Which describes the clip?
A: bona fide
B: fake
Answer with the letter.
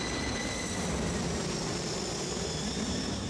A